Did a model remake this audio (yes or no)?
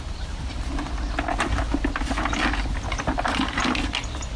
no